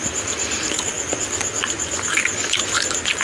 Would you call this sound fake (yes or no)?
no